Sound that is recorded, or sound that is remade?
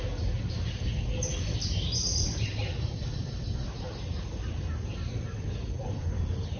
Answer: recorded